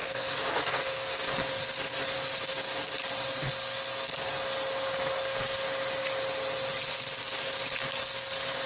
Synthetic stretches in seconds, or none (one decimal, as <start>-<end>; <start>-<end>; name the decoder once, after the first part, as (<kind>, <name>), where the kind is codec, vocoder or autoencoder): 0.0-1.2 (codec, SNAC)